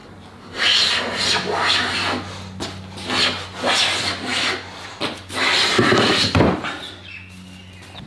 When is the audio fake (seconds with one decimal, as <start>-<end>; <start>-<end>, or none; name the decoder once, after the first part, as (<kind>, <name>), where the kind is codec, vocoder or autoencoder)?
none